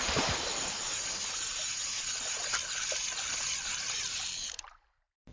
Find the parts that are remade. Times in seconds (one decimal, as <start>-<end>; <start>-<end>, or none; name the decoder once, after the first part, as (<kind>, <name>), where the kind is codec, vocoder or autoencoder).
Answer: 0.0-0.9 (vocoder, BigVGAN v2); 4.1-5.3